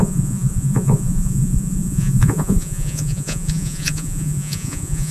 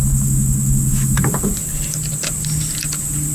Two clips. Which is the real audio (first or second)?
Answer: second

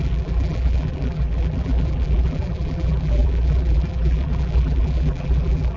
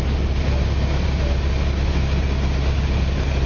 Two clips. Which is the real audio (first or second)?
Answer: second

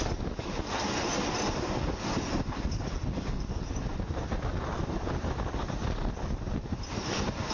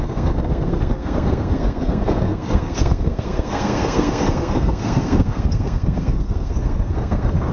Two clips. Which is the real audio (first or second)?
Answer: first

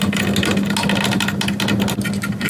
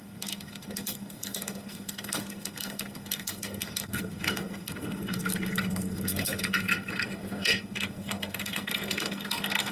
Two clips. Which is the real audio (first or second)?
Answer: first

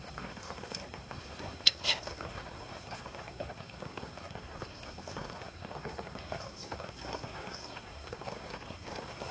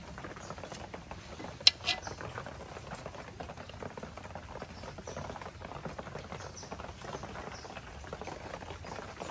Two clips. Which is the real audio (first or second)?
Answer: second